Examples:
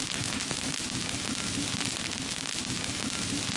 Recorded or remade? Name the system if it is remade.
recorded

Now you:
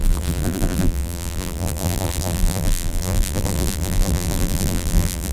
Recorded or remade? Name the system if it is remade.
remade, vocoder, BigVGAN v2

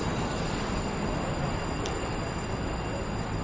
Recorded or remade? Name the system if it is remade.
recorded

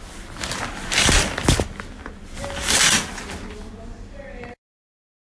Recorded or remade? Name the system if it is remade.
recorded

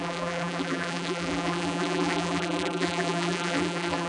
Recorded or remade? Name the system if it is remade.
remade, vocoder, BigVGAN v2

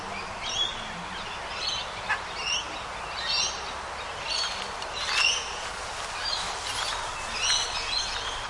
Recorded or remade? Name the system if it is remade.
recorded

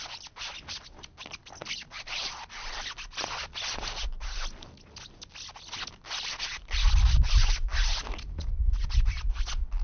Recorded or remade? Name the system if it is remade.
recorded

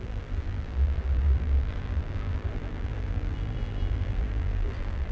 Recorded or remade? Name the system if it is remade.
remade, vocoder, BigVGAN v2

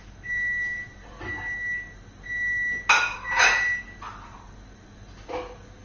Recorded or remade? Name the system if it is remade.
recorded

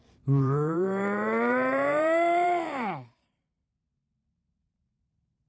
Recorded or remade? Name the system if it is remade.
remade, vocoder, BigVGAN v2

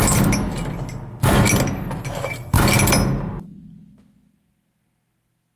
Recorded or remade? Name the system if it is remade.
recorded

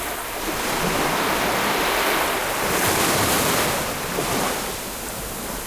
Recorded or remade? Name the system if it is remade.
recorded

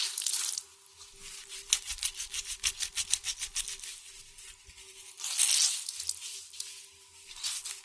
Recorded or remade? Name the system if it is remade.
recorded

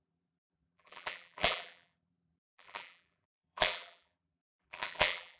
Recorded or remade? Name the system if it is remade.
remade, vocoder, BigVGAN v2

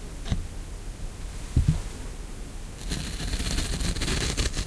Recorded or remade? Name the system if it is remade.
recorded